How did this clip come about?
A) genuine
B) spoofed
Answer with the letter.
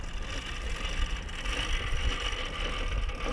A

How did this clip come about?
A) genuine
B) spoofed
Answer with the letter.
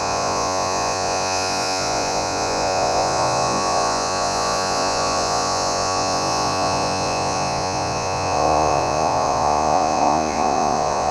B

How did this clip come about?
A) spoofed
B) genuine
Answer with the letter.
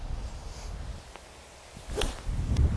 B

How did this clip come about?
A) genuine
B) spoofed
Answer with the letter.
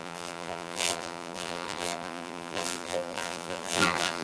B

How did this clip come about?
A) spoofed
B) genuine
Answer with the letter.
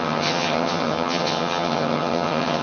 A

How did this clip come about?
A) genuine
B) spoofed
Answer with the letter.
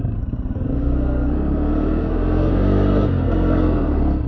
B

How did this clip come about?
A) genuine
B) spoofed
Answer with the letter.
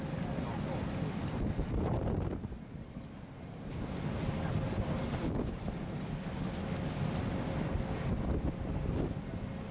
A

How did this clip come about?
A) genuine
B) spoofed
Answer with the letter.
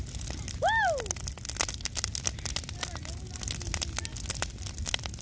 A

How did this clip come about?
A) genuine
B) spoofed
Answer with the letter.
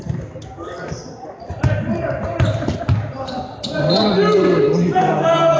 A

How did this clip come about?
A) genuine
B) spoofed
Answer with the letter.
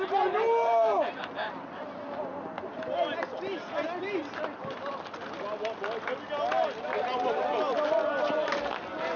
A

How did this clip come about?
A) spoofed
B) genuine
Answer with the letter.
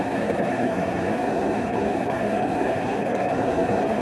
A